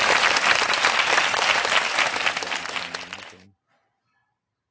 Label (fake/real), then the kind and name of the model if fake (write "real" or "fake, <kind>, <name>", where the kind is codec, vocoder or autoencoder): real